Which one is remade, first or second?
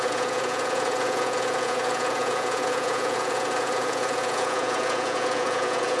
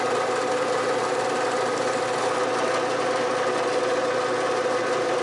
first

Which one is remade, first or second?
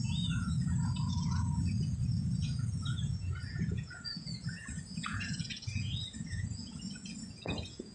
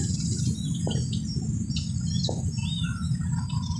first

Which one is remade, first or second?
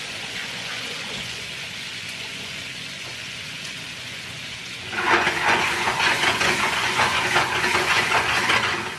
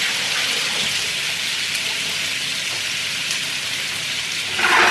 first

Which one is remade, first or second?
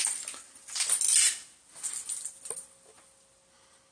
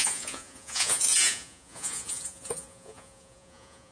second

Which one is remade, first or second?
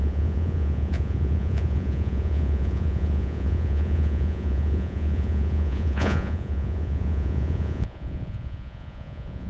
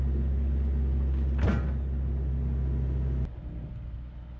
first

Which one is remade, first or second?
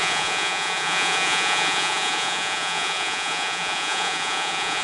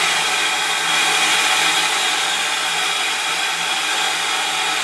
first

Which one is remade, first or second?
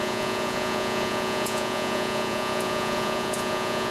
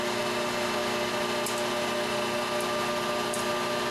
first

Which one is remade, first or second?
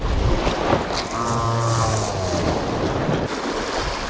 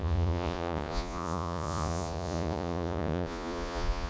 second